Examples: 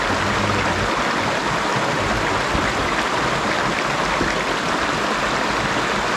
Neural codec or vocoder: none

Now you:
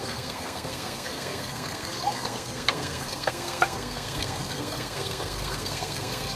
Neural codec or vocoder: codec, SNAC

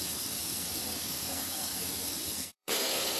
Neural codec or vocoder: codec, SNAC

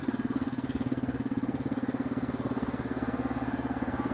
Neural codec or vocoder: codec, SNAC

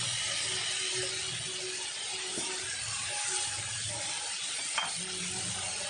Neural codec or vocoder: none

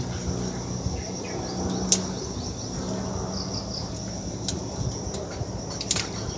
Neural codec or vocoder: none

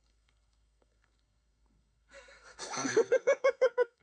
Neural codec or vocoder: codec, SNAC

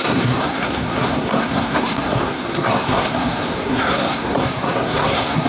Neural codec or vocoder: codec, SNAC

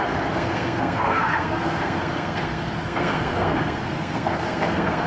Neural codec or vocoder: codec, SNAC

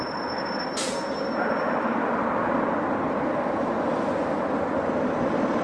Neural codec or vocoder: none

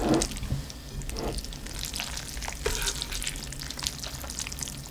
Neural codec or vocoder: none